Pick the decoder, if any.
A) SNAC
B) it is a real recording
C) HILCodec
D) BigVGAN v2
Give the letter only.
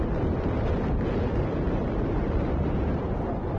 B